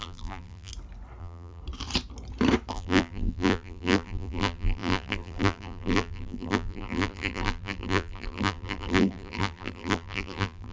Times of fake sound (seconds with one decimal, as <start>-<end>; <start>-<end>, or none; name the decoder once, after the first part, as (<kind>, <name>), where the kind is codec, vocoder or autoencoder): 0.0-0.7 (vocoder, BigVGAN v2); 1.2-1.6; 2.7-10.7